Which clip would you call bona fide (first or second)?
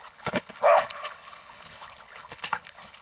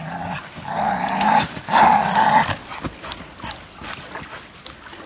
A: second